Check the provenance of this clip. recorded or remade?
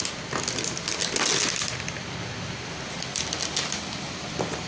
recorded